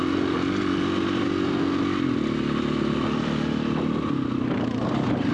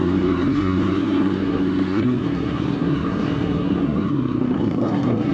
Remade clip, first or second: second